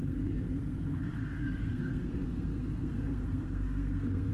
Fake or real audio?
fake